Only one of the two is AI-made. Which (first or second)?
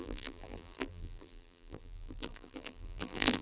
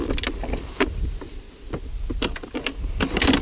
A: first